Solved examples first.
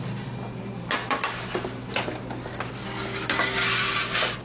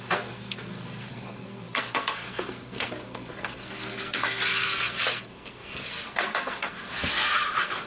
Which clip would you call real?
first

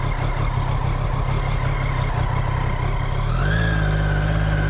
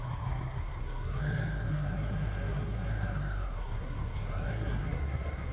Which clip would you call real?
first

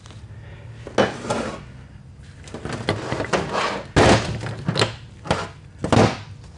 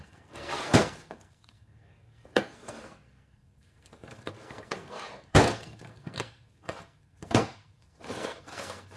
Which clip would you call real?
first